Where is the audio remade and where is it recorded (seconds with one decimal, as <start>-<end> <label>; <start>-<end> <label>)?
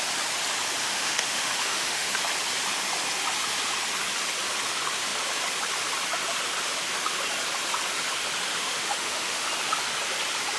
0.0-0.8 recorded; 0.8-2.1 remade; 2.1-8.5 recorded; 8.5-9.5 remade; 9.5-10.6 recorded